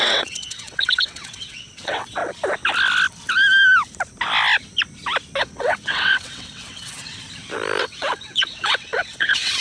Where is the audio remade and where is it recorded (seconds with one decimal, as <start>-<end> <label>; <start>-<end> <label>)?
0.0-2.2 remade; 2.2-5.4 recorded; 5.4-7.2 remade; 7.2-7.8 recorded; 7.8-9.6 remade